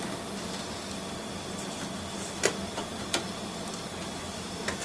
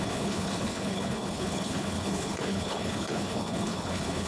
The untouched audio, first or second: first